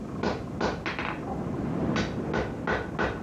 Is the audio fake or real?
real